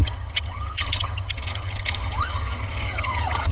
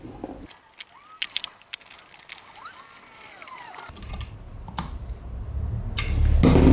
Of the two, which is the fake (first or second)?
first